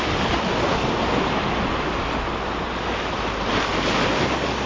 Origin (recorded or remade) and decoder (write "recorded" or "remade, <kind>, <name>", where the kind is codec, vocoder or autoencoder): recorded